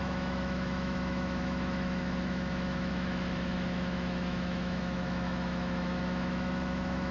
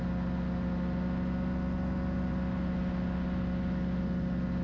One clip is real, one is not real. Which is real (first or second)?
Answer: second